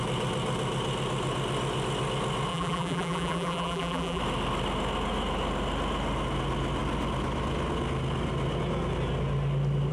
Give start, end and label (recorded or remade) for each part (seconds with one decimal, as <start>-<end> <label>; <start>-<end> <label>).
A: 0.0-2.5 recorded; 2.5-4.2 remade; 4.2-9.9 recorded